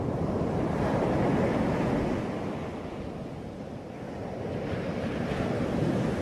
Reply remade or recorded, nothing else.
recorded